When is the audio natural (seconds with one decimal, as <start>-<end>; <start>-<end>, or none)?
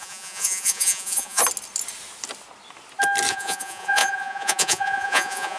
1.4-3.3